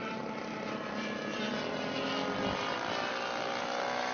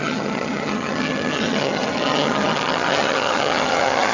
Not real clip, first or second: second